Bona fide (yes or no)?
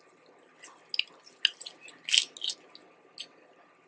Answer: yes